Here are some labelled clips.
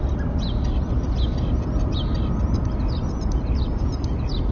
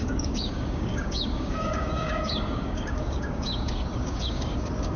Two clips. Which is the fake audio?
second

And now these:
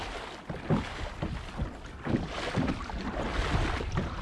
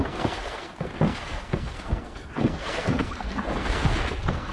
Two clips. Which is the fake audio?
second